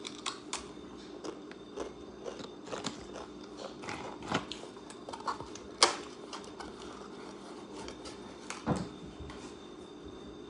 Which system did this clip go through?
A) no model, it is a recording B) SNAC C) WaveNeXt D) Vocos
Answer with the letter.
A